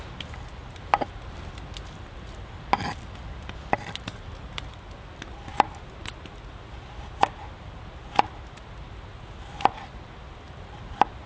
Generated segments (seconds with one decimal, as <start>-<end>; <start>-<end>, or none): none